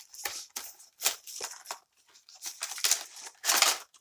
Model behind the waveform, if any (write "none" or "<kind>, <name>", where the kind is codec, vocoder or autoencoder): vocoder, BigVGAN v2